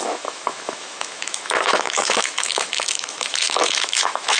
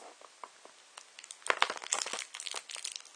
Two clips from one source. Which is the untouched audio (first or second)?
second